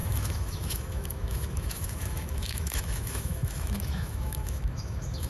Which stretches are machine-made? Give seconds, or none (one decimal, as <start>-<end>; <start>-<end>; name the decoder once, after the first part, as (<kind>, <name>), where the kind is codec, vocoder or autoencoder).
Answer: 0.0-5.3 (autoencoder, DAC-VAE)